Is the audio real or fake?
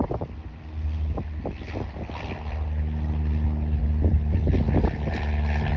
real